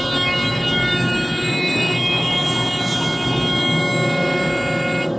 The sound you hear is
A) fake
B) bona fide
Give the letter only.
A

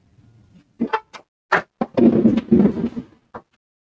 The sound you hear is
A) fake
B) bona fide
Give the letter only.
B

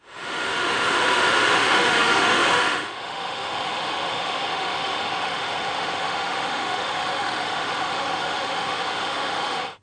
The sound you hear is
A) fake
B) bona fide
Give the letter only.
A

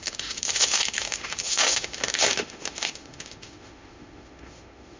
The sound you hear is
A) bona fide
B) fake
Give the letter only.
B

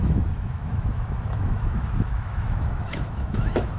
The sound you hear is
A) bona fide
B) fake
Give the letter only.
B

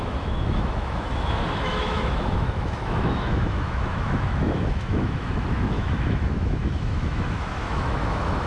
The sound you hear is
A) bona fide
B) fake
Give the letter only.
B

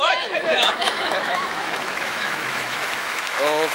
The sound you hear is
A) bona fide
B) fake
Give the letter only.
B